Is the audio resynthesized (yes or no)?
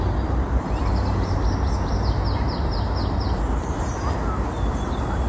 no